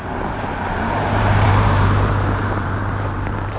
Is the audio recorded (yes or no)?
no